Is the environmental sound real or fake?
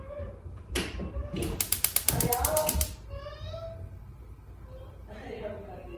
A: real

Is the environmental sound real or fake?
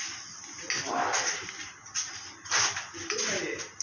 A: real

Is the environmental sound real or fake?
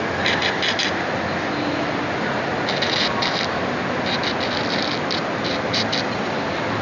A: fake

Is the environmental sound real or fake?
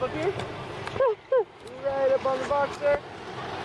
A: real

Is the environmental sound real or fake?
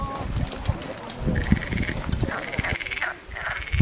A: real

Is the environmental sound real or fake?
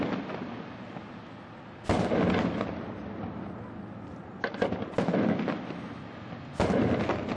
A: real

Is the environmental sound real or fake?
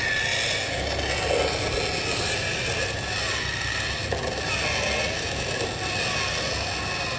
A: real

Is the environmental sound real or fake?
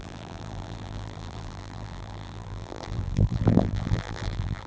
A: fake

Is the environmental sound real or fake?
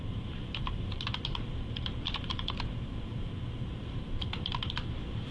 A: fake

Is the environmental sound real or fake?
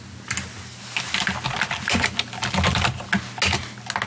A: real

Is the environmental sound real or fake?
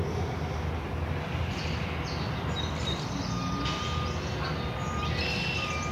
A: real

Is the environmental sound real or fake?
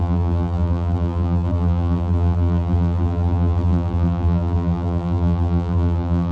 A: fake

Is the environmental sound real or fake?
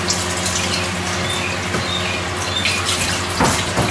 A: real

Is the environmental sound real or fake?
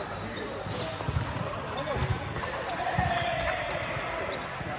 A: fake